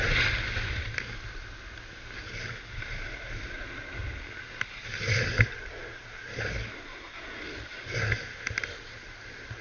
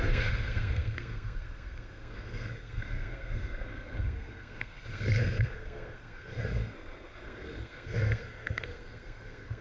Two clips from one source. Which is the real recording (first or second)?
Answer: first